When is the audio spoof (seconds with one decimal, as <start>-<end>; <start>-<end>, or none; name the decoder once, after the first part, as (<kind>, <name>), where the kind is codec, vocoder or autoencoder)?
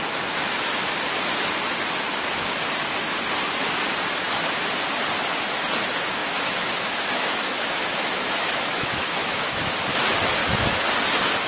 6.2-9.7 (autoencoder, DAC-VAE); 10.4-10.9